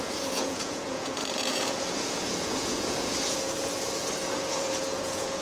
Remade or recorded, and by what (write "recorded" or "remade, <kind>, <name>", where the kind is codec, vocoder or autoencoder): remade, vocoder, Vocos